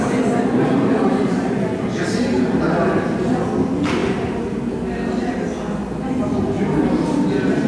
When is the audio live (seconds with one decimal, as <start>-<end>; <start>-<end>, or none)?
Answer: 0.0-7.7